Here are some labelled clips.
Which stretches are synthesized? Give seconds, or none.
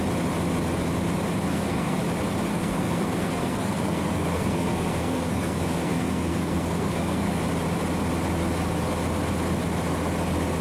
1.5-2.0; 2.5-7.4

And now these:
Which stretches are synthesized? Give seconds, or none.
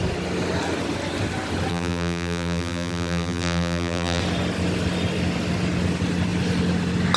1.7-4.2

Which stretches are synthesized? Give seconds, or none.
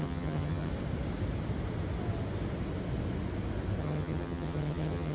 0.0-0.7; 3.8-5.1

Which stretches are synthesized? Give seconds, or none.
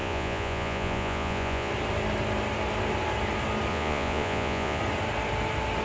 0.0-1.7; 3.7-4.8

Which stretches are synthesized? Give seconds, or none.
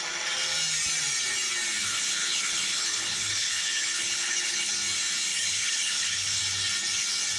1.8-4.7; 5.3-6.4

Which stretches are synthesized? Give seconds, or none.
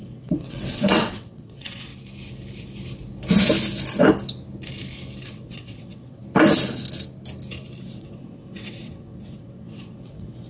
0.0-1.9; 5.3-6.2; 7.8-10.5